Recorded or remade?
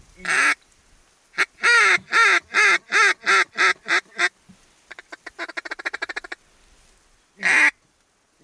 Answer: recorded